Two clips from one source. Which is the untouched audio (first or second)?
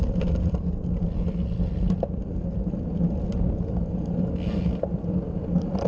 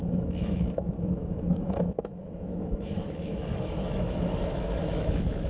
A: first